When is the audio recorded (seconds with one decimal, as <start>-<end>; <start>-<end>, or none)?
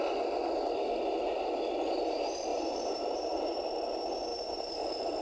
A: 0.0-2.5; 3.6-4.3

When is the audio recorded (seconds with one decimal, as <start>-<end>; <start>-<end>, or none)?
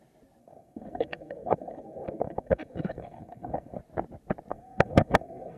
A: 0.0-0.4; 3.8-4.5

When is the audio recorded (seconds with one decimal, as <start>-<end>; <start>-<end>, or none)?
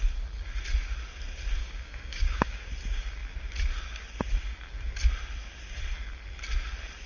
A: 0.0-1.6; 2.7-7.1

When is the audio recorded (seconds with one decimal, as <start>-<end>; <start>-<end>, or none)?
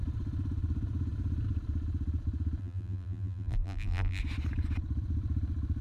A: 0.0-2.6; 4.2-5.8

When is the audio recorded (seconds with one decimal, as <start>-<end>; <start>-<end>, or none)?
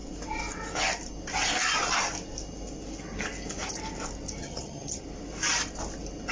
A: 0.0-4.4; 5.0-6.3